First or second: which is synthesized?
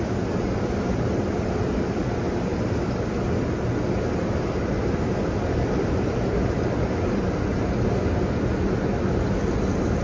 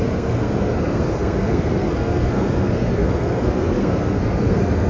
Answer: second